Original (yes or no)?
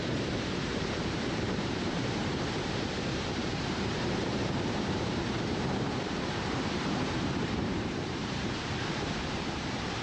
no